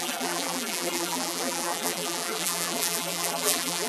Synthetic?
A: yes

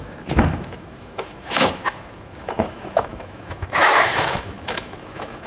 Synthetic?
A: yes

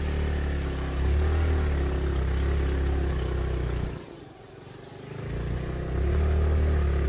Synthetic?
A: no